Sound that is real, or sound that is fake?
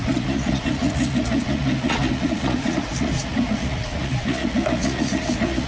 fake